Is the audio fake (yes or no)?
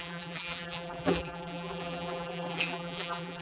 yes